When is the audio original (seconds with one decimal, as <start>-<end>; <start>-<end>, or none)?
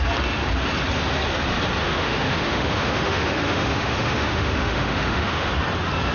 0.0-1.8; 5.5-6.1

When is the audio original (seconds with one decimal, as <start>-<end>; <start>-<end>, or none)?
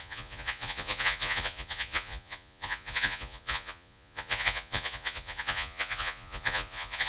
none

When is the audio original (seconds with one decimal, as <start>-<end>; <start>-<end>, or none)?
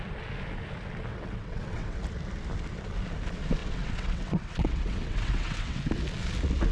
0.0-1.1; 2.0-3.6; 5.8-6.7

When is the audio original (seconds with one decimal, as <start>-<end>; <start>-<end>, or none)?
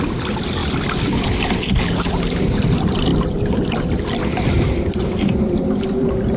0.6-2.6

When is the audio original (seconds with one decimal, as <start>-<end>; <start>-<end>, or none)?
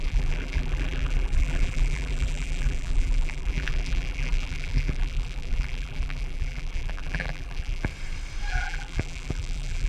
7.9-8.5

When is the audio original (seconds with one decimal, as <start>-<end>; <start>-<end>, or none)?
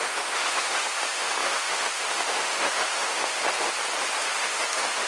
3.4-4.1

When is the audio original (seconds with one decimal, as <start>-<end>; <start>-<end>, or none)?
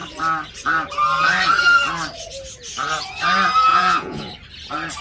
0.0-3.7; 4.3-5.0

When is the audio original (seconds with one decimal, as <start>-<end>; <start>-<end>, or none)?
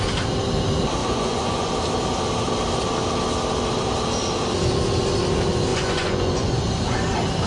0.0-1.0; 1.7-5.7; 6.6-7.5